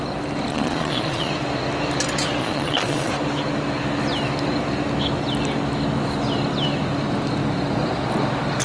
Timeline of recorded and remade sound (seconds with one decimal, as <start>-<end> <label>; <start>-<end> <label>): 0.0-0.5 recorded; 0.5-1.3 remade; 1.3-2.4 recorded; 2.4-3.1 remade; 3.1-8.6 recorded